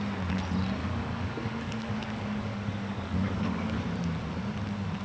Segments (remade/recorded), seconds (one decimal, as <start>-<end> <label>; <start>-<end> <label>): 0.0-0.8 recorded; 0.8-3.8 remade; 3.8-5.0 recorded